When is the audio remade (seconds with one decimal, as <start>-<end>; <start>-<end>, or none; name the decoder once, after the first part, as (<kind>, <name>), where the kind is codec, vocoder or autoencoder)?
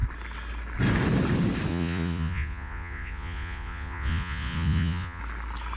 1.7-5.2 (vocoder, Vocos)